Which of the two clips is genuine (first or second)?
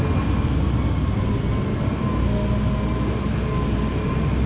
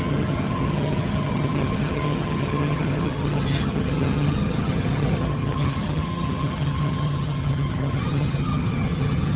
first